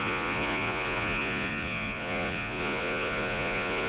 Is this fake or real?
fake